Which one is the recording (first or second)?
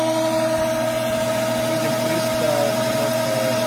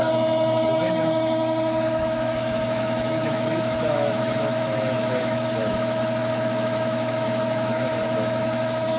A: first